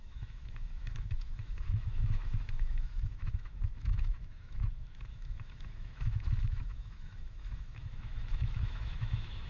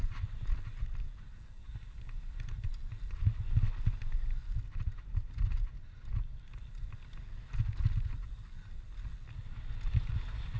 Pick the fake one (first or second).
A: first